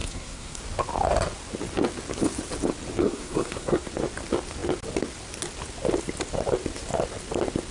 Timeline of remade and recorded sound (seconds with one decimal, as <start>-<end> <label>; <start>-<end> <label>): 0.0-0.6 remade; 0.6-3.0 recorded; 3.0-3.9 remade; 3.9-7.7 recorded